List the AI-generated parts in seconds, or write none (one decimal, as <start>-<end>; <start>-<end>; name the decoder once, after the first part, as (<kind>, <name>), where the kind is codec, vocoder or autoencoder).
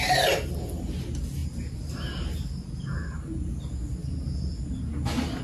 none